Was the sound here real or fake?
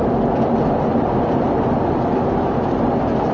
real